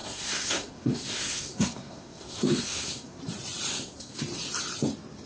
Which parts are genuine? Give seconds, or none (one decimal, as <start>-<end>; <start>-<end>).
3.2-3.7; 4.2-5.3